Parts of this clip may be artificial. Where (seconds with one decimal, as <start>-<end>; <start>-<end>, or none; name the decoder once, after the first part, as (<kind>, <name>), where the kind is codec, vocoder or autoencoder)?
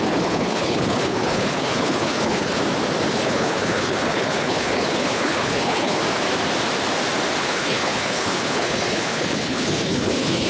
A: 0.0-2.6 (codec, HILCodec); 3.1-6.0; 7.4-10.5